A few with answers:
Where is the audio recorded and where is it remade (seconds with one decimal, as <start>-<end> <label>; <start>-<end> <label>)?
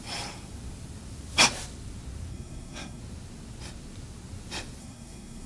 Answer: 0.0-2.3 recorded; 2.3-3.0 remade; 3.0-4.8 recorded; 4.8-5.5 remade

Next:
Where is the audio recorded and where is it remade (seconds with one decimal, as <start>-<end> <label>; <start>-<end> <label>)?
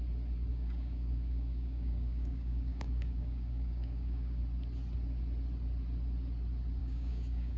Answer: 0.0-0.5 recorded; 0.5-4.4 remade; 4.4-6.8 recorded; 6.8-7.6 remade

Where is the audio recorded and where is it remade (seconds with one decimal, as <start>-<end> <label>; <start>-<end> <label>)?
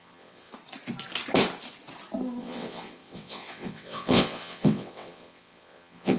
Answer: 0.0-0.5 remade; 0.5-2.4 recorded; 2.4-6.2 remade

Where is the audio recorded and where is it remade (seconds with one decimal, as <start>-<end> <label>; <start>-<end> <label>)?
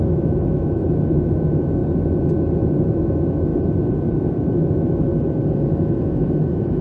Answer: 0.0-1.8 remade; 1.8-2.9 recorded; 2.9-3.5 remade; 3.5-4.4 recorded; 4.4-5.1 remade; 5.1-5.7 recorded; 5.7-6.8 remade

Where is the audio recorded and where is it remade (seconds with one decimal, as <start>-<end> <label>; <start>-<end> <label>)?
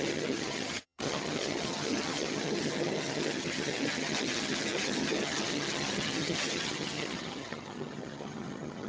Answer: 0.0-8.9 remade